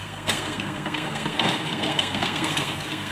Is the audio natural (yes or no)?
no